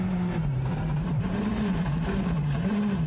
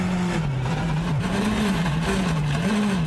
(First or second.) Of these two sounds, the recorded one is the second